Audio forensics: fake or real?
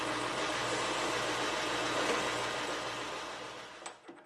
real